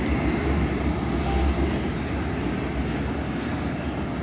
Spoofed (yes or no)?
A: no